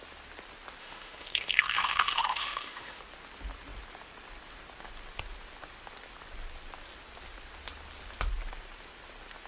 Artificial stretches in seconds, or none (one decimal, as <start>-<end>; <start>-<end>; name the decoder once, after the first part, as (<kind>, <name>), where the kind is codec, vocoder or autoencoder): 0.8-3.0 (autoencoder, DAC-VAE)